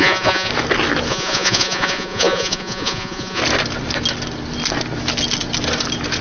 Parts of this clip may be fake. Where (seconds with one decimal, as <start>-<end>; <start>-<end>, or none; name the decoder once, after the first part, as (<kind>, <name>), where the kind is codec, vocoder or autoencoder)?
0.0-0.5 (vocoder, Vocos); 1.1-3.4